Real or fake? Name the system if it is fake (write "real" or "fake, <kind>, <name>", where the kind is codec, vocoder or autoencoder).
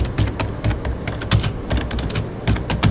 real